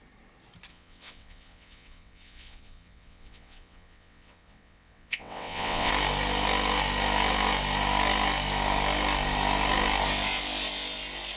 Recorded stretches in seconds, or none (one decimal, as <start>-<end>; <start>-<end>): 0.0-0.7; 5.9-11.4